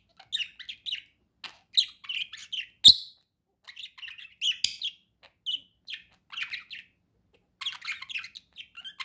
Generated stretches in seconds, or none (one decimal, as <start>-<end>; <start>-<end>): none